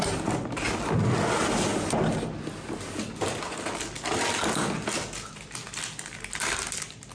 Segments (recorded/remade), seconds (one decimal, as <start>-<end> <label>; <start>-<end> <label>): 0.0-7.1 recorded